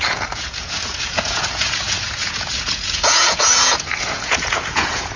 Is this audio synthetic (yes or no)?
yes